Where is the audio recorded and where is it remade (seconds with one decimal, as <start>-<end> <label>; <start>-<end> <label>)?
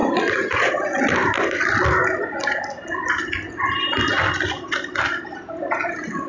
0.0-0.7 remade; 0.7-6.3 recorded